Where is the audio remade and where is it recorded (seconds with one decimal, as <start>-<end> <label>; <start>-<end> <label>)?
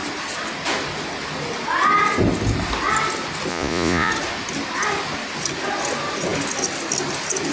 0.0-3.5 recorded; 3.5-4.1 remade; 4.1-7.5 recorded